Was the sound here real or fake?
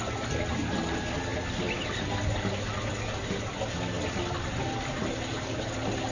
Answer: real